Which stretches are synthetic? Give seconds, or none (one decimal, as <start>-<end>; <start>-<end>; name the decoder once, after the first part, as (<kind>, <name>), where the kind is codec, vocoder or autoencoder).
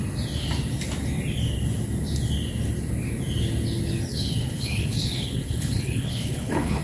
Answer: 4.1-6.8 (codec, HILCodec)